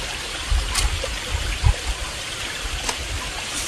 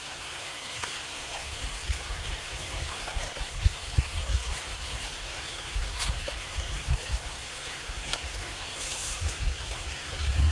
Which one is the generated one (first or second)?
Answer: second